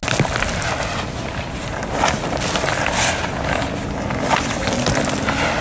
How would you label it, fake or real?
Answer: real